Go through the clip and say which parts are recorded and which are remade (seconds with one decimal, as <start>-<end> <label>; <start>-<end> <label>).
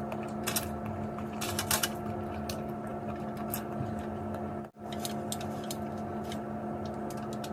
0.0-7.5 recorded